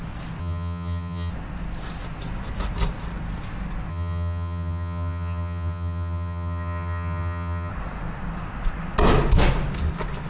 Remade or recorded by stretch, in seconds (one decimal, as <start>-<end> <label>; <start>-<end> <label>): 0.0-0.4 recorded; 0.4-1.3 remade; 1.3-3.9 recorded; 3.9-7.7 remade; 7.7-10.3 recorded

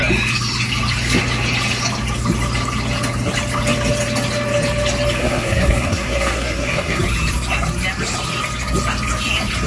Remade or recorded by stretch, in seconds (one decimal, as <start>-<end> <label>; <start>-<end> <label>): 0.0-5.2 recorded; 5.2-7.0 remade; 7.0-9.7 recorded